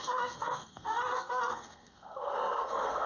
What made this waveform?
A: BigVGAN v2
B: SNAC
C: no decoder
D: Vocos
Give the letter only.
B